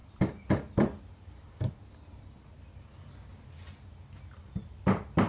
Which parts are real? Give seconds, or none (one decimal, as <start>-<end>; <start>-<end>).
1.5-5.3